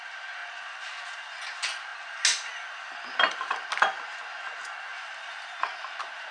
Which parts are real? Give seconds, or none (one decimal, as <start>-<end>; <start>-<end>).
0.0-6.3